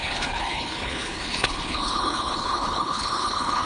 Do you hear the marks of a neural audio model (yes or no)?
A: yes